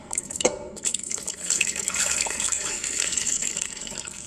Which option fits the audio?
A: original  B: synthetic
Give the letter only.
B